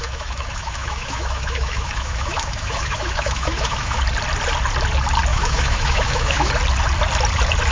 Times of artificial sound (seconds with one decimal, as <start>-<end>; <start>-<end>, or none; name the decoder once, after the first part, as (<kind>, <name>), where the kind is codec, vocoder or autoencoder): 0.0-4.0 (autoencoder, DAC-VAE); 5.3-6.5